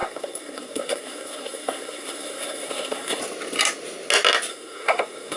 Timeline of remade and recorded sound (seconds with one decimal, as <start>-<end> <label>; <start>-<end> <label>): 0.0-3.2 remade; 3.2-4.5 recorded; 4.5-5.4 remade